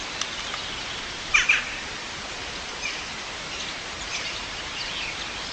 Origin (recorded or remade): recorded